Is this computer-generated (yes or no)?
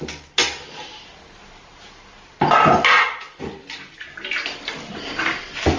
no